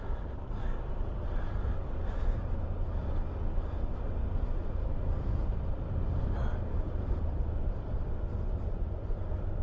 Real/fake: real